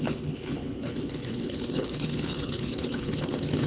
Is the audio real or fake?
fake